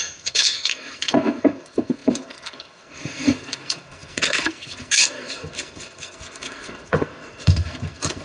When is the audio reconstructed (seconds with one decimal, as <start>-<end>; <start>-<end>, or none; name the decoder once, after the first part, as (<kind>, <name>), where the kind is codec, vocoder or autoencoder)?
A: 0.0-8.2 (codec, SNAC)

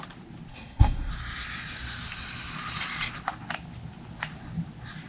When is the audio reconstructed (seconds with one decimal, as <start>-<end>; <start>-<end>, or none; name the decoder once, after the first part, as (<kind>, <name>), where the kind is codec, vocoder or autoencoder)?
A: 0.5-1.1 (codec, SNAC)

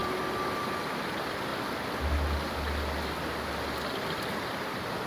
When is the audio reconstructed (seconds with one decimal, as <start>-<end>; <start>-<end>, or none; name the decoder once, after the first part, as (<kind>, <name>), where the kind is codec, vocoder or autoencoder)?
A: none

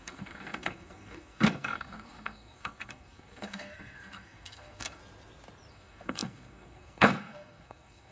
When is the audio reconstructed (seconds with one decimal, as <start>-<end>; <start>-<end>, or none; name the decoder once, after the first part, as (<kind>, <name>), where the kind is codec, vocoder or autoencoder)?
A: 0.0-5.0 (codec, SNAC); 5.7-8.1

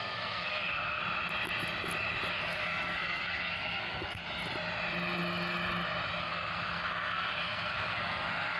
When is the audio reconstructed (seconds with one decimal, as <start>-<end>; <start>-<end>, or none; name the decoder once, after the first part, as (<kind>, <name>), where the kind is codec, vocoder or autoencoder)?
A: 0.0-1.0 (codec, SNAC); 2.3-4.2; 6.2-8.6